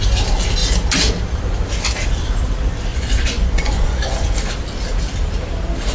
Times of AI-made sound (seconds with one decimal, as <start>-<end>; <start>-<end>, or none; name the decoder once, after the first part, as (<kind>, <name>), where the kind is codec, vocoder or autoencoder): 2.9-4.3 (vocoder, Vocos)